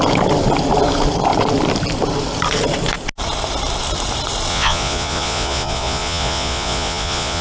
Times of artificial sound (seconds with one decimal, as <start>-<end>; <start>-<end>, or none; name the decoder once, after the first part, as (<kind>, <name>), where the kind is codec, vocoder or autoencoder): 4.5-7.4 (vocoder, Vocos)